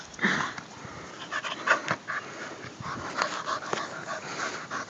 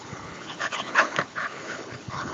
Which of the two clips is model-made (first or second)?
second